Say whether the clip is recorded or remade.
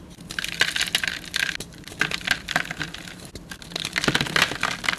recorded